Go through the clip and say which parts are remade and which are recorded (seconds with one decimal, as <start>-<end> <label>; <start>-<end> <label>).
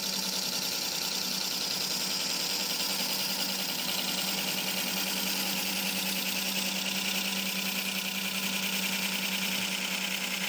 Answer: 0.0-10.5 recorded